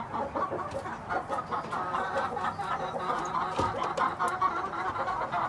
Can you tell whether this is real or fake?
real